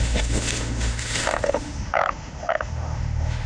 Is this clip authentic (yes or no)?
no